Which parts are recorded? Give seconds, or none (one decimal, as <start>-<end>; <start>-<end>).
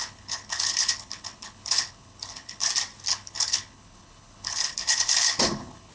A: 2.7-3.1